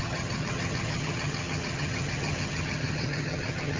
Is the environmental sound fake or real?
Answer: fake